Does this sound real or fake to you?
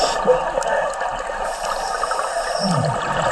real